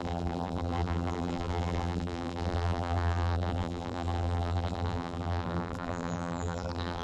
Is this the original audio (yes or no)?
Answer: no